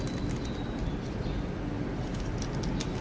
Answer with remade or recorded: recorded